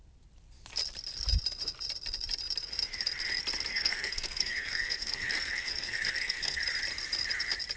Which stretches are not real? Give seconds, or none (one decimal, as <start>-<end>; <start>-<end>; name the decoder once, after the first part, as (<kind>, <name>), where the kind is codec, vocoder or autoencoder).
3.7-6.6 (codec, SNAC)